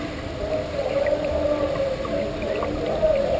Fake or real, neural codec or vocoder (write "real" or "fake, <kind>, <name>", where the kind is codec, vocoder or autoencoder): real